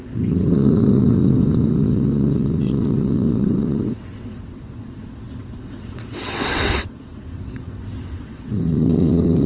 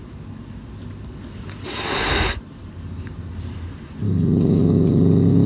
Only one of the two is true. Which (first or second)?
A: second